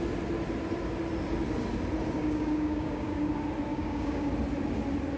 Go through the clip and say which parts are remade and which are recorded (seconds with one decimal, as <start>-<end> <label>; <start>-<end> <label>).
0.0-2.2 recorded; 2.2-3.3 remade; 3.3-3.7 recorded; 3.7-4.3 remade; 4.3-5.2 recorded